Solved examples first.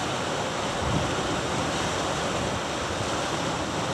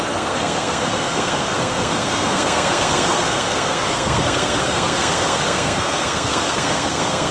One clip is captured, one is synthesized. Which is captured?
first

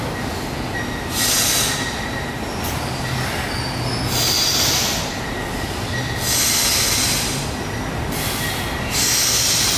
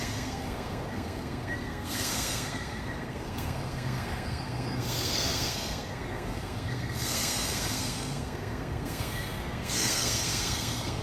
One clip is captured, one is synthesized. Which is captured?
first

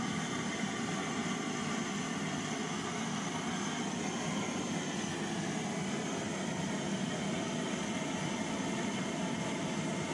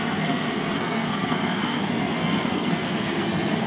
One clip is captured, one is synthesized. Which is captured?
first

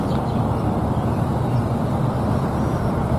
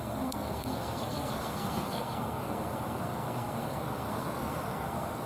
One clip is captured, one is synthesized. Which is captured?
first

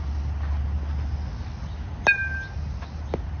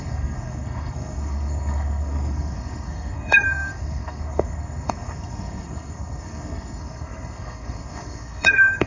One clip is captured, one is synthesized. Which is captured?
first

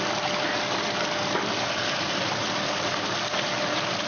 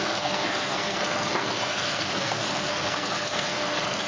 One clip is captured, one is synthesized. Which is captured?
first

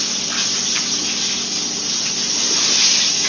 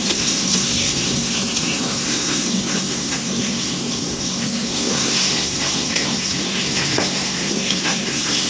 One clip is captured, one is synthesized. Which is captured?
first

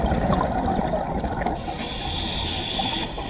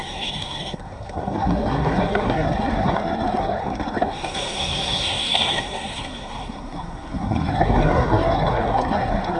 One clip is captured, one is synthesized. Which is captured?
first